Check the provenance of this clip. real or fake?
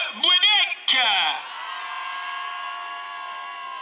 real